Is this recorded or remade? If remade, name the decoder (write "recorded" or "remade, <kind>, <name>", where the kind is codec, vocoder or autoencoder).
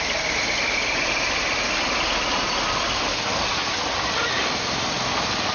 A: recorded